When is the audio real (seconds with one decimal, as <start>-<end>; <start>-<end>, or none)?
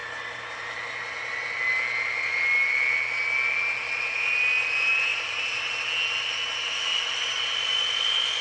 0.0-5.1; 5.7-8.4